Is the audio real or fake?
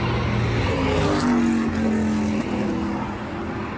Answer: real